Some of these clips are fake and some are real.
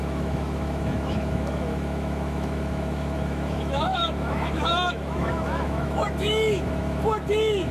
fake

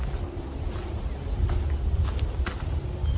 real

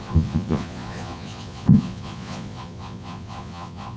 fake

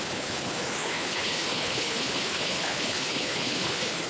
fake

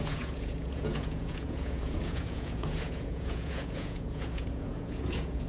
fake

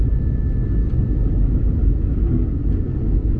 real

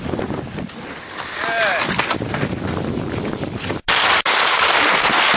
real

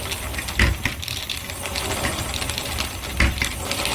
real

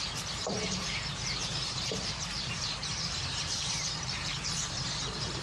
fake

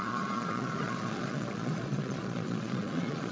fake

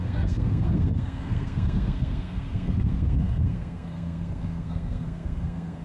fake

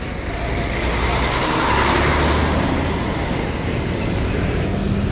real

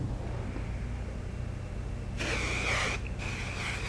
real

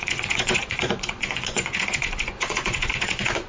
fake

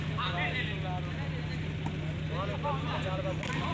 real